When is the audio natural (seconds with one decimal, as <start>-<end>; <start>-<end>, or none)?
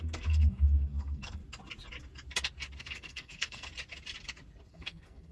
1.4-2.8; 3.7-4.7